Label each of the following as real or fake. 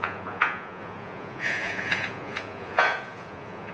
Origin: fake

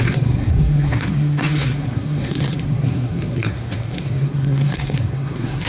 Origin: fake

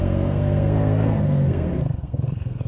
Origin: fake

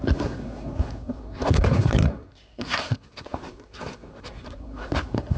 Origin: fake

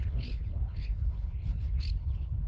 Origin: fake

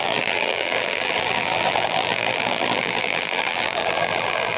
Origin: fake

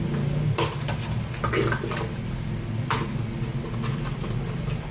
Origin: real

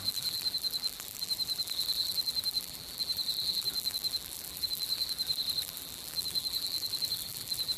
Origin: fake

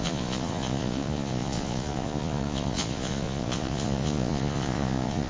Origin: fake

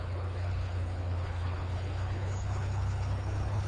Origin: fake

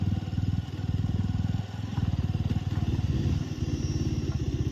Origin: real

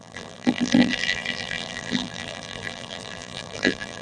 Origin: fake